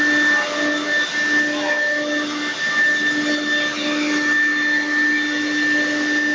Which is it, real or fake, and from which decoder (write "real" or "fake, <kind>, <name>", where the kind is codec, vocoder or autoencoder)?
real